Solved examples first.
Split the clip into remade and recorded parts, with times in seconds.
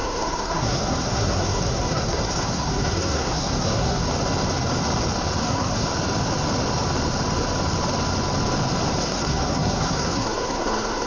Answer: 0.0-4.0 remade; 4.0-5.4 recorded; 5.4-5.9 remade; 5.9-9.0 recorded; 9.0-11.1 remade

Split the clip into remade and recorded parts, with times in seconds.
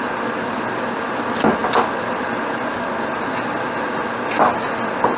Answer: 0.0-5.2 recorded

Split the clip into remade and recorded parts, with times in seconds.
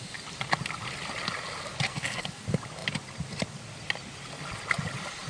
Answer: 0.0-1.9 recorded; 1.9-2.4 remade; 2.4-5.3 recorded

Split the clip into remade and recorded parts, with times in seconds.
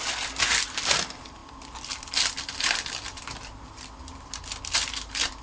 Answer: 0.0-5.4 recorded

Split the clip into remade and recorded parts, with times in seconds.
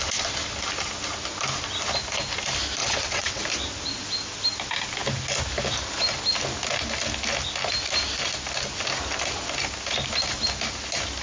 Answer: 0.0-2.8 recorded; 2.8-3.4 remade; 3.4-11.2 recorded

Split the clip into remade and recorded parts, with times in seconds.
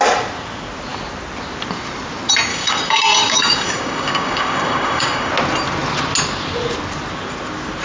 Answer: 0.0-2.5 recorded; 2.5-5.3 remade; 5.3-7.8 recorded